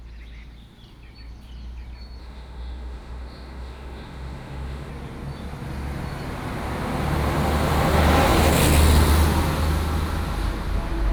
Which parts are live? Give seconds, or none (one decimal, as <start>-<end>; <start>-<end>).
0.0-2.2; 4.9-11.1